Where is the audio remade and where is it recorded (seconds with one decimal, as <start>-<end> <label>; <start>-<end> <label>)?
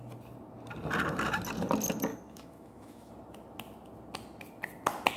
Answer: 0.0-2.1 recorded; 2.1-3.1 remade; 3.1-5.2 recorded